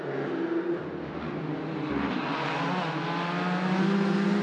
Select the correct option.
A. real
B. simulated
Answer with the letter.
A